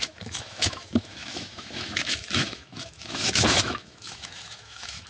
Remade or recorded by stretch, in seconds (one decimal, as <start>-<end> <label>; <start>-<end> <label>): 0.0-5.1 remade